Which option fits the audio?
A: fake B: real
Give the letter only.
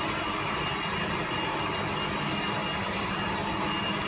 B